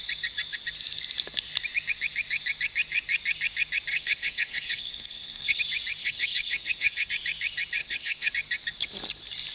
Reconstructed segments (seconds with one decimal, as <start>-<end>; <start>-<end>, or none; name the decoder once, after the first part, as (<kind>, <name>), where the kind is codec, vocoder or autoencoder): 3.9-5.6 (codec, HILCodec); 6.0-7.1; 7.8-8.3